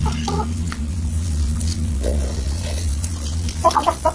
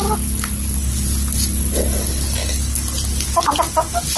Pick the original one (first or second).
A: second